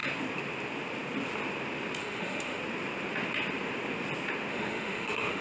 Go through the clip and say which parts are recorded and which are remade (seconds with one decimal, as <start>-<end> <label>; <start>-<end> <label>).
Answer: 0.0-2.0 recorded; 2.0-2.6 remade; 2.6-4.5 recorded; 4.5-5.4 remade